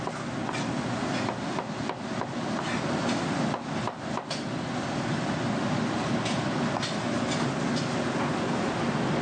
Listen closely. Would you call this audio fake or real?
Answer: real